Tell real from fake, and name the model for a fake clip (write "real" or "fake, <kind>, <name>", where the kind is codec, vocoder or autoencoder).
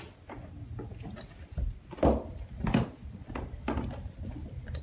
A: real